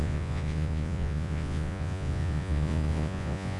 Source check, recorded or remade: remade